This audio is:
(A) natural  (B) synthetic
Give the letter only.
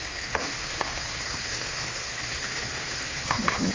B